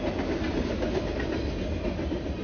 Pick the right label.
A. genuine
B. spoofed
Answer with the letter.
A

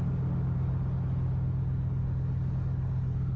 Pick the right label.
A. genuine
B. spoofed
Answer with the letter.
A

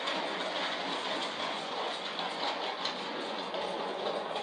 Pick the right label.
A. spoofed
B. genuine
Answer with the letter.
A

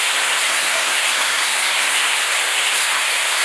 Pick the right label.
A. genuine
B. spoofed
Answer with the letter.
B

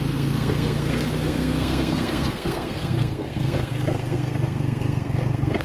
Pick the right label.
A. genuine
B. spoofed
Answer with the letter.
B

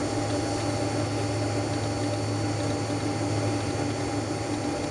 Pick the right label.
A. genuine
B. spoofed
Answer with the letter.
A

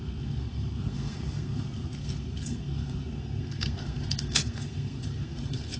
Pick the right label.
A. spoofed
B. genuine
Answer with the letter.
A